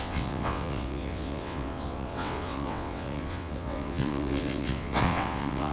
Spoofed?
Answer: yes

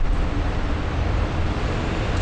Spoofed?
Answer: no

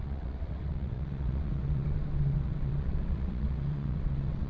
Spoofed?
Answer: yes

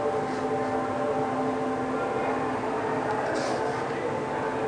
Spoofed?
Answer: no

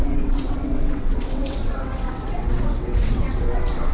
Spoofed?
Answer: yes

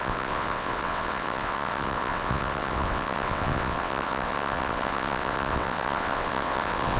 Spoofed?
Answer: yes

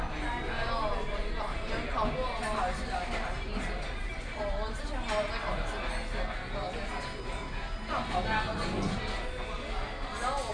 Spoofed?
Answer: no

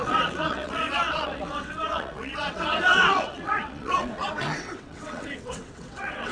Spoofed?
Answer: yes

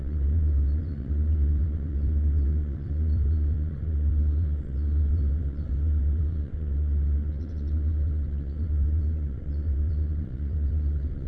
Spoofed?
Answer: yes